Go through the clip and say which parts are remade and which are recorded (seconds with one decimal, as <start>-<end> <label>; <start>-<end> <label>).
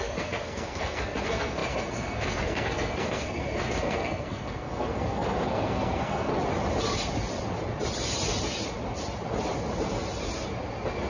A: 0.0-6.3 remade; 6.3-11.1 recorded